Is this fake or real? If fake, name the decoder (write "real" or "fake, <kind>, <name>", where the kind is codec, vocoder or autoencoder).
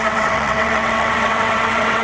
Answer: fake, vocoder, WaveNeXt